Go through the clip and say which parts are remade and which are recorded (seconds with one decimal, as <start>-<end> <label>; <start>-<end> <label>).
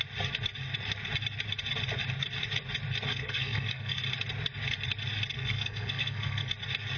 0.0-3.1 recorded; 3.1-4.0 remade; 4.0-5.3 recorded; 5.3-6.5 remade; 6.5-7.0 recorded